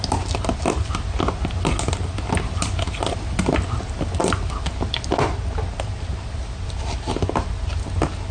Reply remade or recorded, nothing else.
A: recorded